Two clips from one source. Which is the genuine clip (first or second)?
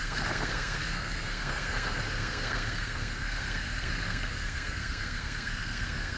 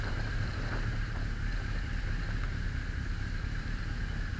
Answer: second